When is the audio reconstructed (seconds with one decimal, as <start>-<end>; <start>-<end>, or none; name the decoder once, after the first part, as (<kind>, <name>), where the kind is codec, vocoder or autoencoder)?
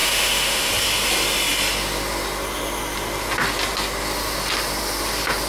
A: 0.0-0.7 (autoencoder, DAC-VAE)